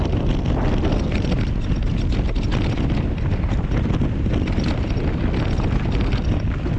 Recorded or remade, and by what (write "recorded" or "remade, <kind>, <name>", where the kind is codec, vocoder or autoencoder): recorded